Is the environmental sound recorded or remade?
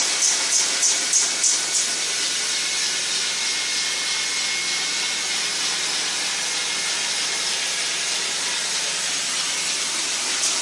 recorded